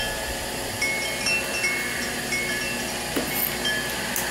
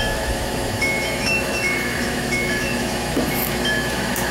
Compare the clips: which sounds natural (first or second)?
first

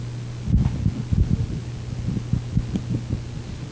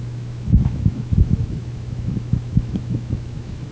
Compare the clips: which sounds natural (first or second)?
first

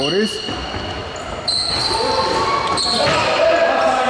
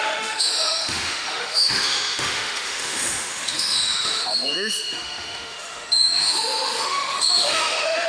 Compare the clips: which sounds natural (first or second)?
first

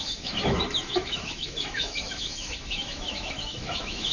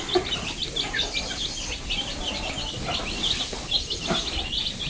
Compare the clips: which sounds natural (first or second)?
second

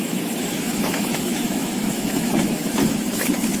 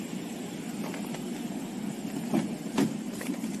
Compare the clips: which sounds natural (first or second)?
second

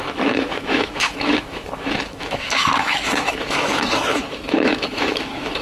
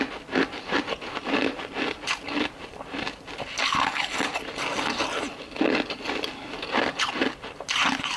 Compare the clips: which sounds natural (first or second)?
second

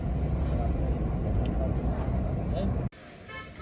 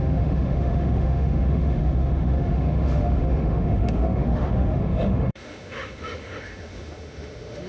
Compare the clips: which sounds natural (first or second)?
first